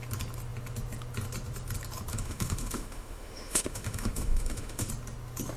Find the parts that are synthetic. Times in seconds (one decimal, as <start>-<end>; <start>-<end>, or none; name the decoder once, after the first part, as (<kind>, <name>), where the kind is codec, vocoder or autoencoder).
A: 2.1-4.9 (autoencoder, DAC-VAE)